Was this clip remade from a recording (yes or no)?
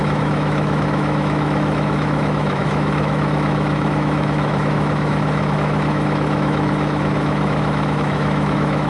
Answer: yes